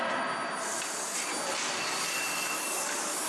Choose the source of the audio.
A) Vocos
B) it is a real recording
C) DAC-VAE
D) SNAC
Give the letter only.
B